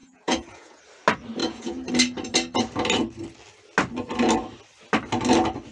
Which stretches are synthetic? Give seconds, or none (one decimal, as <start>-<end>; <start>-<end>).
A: 0.0-0.8; 1.4-1.9